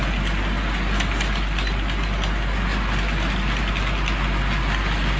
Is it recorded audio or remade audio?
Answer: recorded